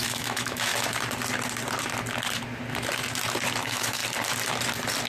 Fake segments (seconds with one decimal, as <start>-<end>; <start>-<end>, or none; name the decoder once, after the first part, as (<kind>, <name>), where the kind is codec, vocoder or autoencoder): 0.0-0.7 (autoencoder, DAC-VAE); 3.6-4.0